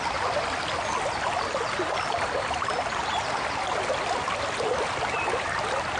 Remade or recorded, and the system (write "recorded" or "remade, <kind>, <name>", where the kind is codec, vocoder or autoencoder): recorded